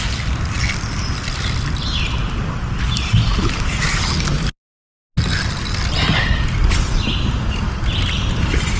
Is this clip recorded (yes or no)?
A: yes